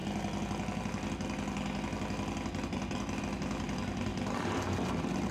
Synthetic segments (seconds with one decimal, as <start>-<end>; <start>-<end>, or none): 3.2-5.3